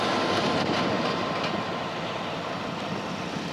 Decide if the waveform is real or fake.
real